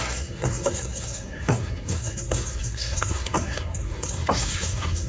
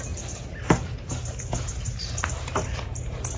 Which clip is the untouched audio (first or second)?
second